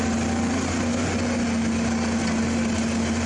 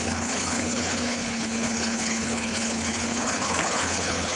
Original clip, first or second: first